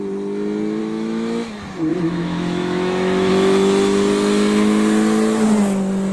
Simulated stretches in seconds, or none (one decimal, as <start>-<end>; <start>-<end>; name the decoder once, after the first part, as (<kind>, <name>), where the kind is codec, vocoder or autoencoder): 0.8-1.5 (autoencoder, DAC-VAE); 1.9-3.3